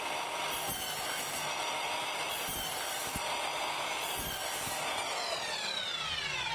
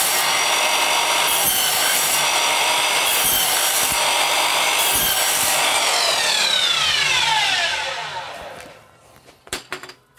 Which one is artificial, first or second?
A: second